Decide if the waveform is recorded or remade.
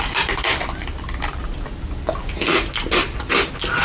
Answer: recorded